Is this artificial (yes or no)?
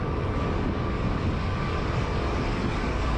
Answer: yes